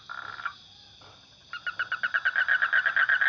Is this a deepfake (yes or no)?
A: no